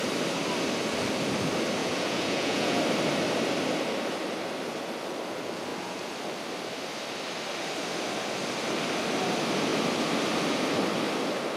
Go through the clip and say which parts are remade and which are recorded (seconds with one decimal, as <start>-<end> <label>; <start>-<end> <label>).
0.0-1.8 recorded; 1.8-2.8 remade; 2.8-11.6 recorded